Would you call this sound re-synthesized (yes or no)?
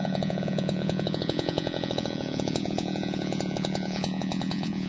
yes